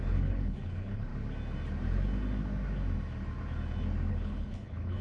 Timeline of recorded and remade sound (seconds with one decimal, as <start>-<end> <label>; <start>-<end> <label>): 0.0-1.1 remade; 1.1-4.1 recorded; 4.1-5.0 remade